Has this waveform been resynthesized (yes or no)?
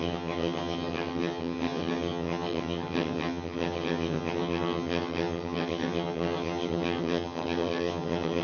yes